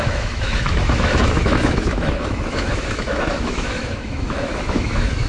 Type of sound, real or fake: fake